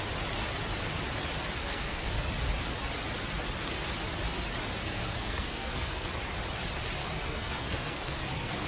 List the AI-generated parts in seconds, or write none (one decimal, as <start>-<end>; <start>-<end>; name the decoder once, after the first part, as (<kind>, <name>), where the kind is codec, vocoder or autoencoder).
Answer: 1.6-2.3 (codec, SNAC); 4.8-6.1; 7.0-8.7

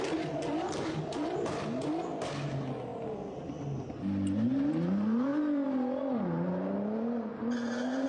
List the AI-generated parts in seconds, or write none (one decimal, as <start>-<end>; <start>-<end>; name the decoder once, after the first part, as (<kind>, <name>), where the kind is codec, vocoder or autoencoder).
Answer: none

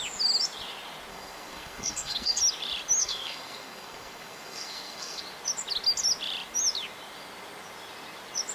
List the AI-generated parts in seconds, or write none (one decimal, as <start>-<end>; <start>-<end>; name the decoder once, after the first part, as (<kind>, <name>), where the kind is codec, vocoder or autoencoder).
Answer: 1.1-2.4 (codec, SNAC); 3.0-5.2

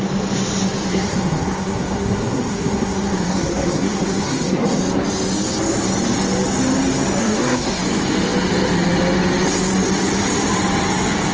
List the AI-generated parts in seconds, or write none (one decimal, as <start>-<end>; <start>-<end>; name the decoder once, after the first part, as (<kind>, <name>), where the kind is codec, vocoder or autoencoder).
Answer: 0.9-4.8 (codec, SNAC); 7.2-7.8

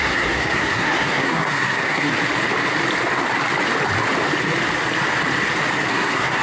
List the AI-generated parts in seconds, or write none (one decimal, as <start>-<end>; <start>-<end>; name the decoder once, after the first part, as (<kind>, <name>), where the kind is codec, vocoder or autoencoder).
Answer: 0.0-2.1 (codec, SNAC); 5.9-6.4

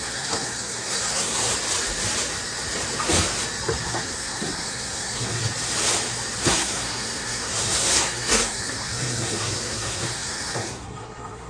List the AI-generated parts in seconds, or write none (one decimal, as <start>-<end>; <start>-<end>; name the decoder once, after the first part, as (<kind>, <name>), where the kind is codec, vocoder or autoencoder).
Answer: 0.0-1.5 (codec, SNAC); 3.8-5.4; 6.4-11.5

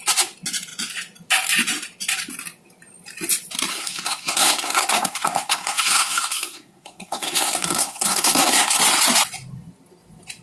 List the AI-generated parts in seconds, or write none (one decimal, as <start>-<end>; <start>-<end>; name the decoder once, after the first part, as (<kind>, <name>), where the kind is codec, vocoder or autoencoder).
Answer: 3.7-8.8 (codec, SNAC)